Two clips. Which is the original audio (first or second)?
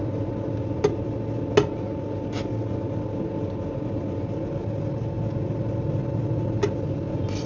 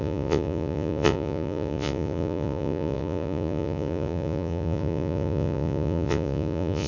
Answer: first